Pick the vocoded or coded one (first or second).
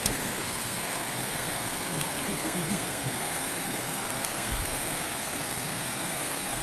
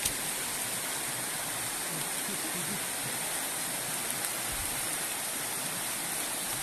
first